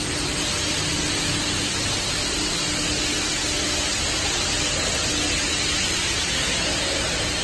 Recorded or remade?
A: recorded